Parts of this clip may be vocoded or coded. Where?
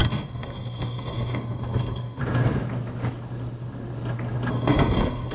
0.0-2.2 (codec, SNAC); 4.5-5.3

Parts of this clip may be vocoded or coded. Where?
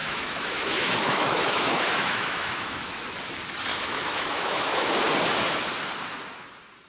0.0-2.9 (autoencoder, DAC-VAE); 3.7-4.9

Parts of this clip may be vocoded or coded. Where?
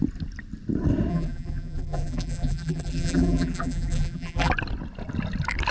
1.1-4.5 (vocoder, BigVGAN v2)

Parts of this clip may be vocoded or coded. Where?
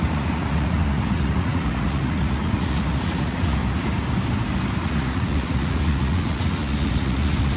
0.0-3.6 (vocoder, Vocos); 4.8-7.6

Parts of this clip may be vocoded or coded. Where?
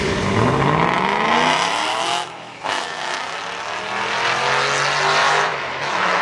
1.9-3.2 (autoencoder, DAC-VAE); 5.2-6.2